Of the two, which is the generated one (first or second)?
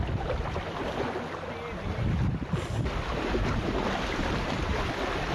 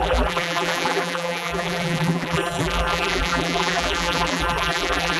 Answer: second